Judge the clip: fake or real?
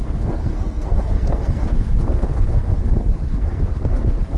fake